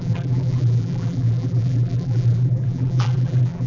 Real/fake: fake